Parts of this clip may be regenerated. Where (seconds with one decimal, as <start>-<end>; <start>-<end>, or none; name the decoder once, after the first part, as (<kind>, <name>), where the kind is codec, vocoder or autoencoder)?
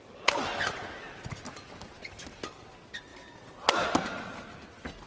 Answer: none